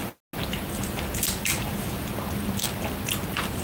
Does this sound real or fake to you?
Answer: real